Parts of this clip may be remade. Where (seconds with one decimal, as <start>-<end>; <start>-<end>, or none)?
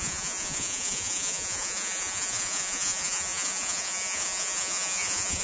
0.0-5.4